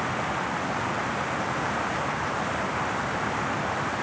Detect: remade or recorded recorded